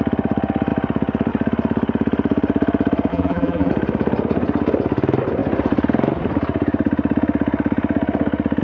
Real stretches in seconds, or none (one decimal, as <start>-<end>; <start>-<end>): 0.0-3.1; 3.7-8.6